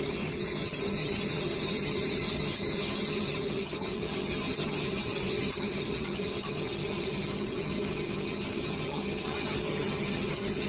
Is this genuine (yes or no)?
no